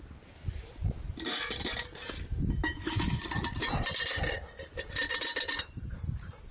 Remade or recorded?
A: recorded